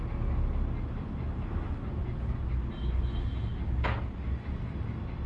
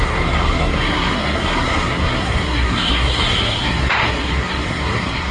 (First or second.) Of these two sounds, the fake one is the second